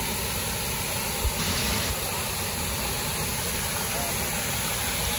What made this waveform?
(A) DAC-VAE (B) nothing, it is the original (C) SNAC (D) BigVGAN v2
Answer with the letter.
B